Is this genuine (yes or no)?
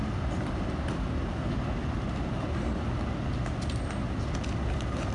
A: yes